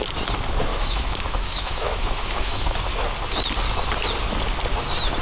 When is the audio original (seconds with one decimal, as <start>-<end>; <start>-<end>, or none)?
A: 0.0-0.7; 2.8-5.2